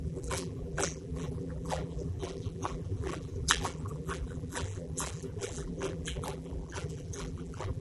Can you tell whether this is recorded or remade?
remade